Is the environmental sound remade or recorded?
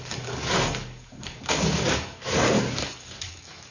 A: remade